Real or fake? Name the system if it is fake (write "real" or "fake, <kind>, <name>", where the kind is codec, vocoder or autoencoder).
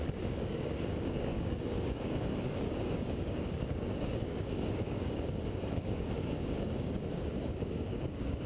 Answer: fake, codec, DAC